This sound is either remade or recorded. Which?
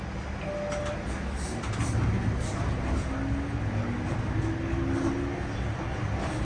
recorded